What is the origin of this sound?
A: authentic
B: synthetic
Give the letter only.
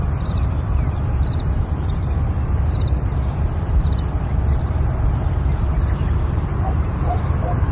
B